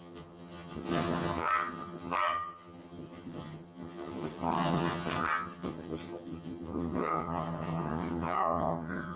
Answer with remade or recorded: remade